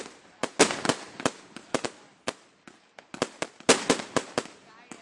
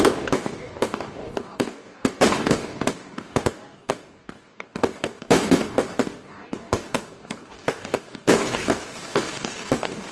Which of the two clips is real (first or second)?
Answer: first